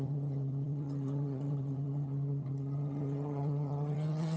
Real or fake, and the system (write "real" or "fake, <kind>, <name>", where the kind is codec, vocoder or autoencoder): fake, vocoder, HiFi-GAN